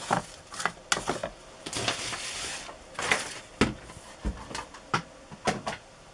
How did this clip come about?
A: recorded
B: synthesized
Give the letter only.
A